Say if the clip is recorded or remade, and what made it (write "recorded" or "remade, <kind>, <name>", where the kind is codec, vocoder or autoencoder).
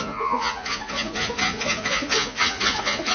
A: remade, vocoder, Vocos